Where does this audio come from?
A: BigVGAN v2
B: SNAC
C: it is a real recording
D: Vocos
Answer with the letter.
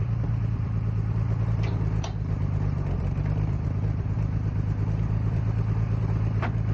A